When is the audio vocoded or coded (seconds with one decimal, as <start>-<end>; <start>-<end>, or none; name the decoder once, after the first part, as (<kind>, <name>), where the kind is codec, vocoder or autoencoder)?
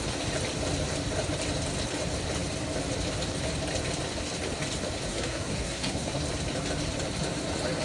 5.1-6.2 (codec, SNAC)